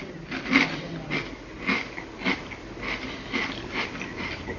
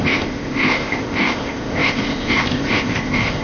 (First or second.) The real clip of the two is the first